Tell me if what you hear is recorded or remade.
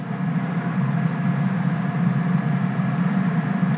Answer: recorded